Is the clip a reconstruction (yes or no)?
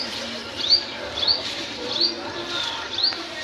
no